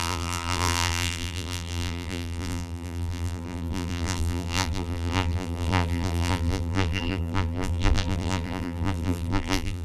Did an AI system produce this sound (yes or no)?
yes